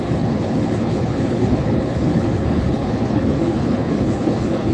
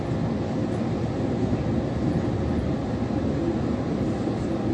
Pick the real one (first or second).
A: second